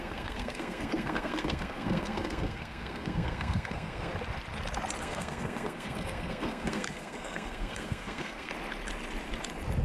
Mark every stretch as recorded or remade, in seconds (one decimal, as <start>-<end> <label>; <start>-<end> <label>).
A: 0.0-4.1 remade; 4.1-5.0 recorded; 5.0-8.5 remade; 8.5-9.8 recorded